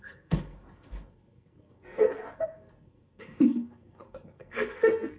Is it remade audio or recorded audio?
remade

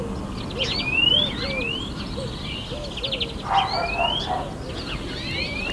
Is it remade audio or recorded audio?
recorded